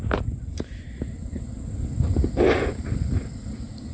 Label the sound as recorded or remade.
recorded